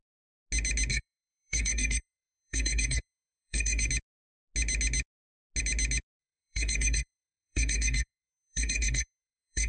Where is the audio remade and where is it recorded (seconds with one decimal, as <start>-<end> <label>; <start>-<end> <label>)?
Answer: 0.0-0.9 recorded; 0.9-3.9 remade; 3.9-6.2 recorded; 6.2-9.7 remade

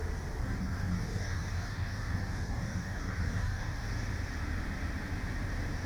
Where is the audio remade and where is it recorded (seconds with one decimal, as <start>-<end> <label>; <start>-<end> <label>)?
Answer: 0.0-0.4 recorded; 0.4-3.9 remade; 3.9-5.9 recorded

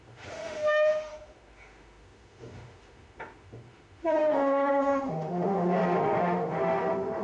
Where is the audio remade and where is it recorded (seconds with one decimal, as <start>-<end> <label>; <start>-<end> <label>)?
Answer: 0.0-7.2 remade

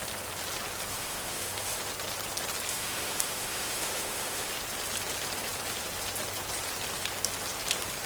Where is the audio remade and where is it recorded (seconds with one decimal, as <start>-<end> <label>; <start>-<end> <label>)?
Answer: 0.0-0.9 recorded; 0.9-1.8 remade; 1.8-2.7 recorded; 2.7-4.5 remade; 4.5-8.1 recorded

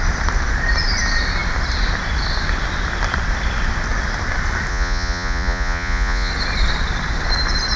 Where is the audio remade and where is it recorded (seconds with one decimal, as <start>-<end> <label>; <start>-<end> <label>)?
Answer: 0.0-4.7 recorded; 4.7-6.3 remade; 6.3-7.8 recorded